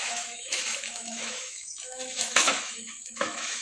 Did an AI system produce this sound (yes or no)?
yes